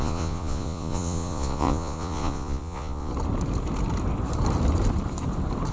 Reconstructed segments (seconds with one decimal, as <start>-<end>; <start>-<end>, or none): 0.0-3.1